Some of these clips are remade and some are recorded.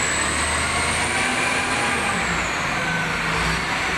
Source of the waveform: recorded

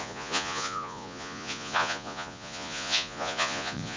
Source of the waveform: remade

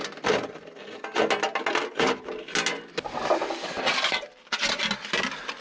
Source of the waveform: recorded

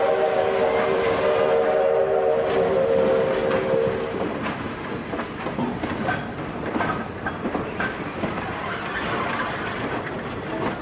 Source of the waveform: recorded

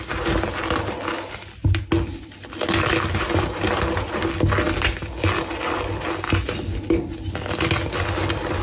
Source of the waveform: recorded